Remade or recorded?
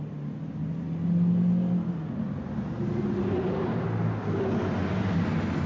recorded